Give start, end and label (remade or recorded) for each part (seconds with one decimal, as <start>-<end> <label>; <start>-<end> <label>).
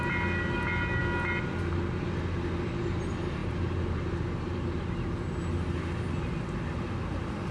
0.0-3.4 recorded; 3.4-5.4 remade; 5.4-7.5 recorded